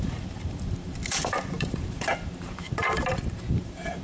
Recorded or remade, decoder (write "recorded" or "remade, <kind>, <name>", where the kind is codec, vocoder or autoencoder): remade, vocoder, BigVGAN v2